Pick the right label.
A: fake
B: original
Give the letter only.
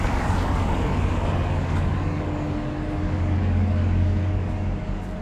A